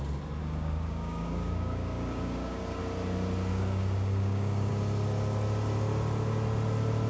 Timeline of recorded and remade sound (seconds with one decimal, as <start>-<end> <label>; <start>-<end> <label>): 0.0-0.4 recorded; 0.4-2.8 remade; 2.8-3.5 recorded; 3.5-4.7 remade; 4.7-7.1 recorded